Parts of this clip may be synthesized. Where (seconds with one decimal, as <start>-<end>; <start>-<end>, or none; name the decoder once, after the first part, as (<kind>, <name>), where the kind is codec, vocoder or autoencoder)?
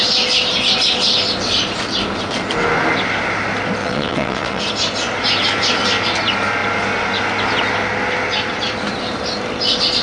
3.8-4.6 (vocoder, WaveNeXt)